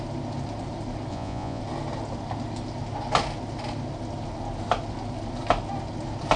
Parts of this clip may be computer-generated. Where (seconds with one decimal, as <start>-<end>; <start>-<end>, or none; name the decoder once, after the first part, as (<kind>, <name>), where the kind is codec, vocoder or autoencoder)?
1.1-1.6 (vocoder, Vocos)